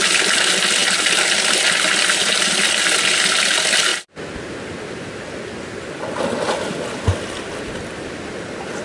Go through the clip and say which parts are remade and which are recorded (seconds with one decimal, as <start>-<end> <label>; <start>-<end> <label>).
0.0-8.8 recorded